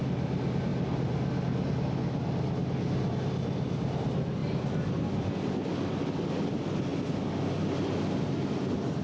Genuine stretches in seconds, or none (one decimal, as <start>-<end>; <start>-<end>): 0.0-9.0